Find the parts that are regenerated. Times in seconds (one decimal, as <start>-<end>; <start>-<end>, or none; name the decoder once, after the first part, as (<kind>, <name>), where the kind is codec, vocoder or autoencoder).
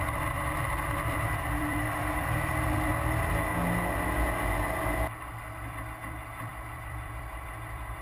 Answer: 0.0-2.9 (vocoder, BigVGAN v2); 5.2-8.0